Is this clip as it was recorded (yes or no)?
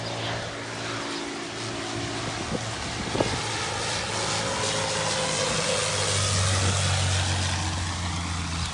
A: yes